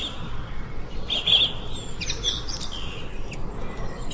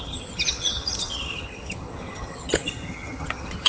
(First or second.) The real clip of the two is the first